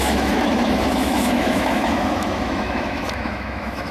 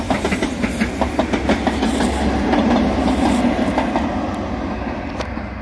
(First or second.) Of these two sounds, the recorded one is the second